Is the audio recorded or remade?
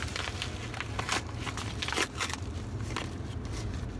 recorded